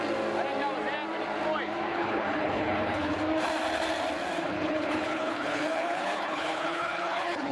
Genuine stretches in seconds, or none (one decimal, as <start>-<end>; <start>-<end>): 0.0-1.9; 3.2-4.5